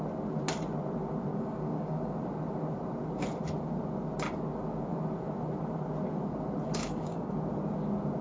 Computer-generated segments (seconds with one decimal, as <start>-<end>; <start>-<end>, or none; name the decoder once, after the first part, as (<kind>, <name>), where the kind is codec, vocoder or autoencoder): 1.3-2.1 (codec, DAC); 6.8-7.3